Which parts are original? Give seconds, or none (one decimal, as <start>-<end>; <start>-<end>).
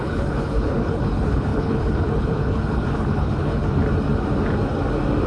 3.8-5.3